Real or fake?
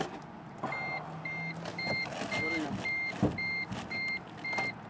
real